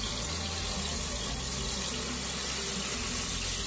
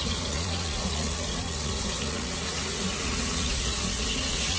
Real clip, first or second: first